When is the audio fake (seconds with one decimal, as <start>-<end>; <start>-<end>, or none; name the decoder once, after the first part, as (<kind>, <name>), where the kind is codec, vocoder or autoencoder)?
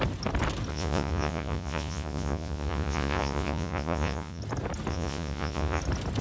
0.7-4.4 (vocoder, Vocos); 4.9-5.8